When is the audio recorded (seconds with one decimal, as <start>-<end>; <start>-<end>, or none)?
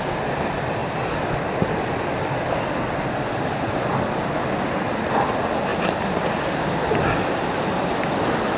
0.0-8.6